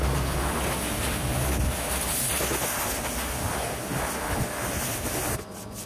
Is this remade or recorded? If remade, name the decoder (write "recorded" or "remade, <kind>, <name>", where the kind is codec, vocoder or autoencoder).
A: recorded